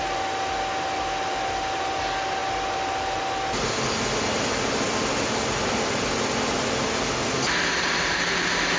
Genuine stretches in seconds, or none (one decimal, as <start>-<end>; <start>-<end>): 0.0-8.8